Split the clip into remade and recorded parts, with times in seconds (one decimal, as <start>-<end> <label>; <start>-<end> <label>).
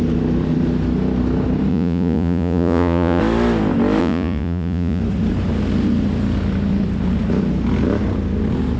0.0-1.7 recorded; 1.7-3.2 remade; 3.2-4.0 recorded; 4.0-5.0 remade; 5.0-8.8 recorded